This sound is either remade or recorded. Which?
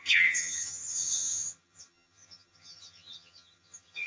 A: remade